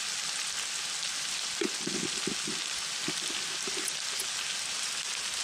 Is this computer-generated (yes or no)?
no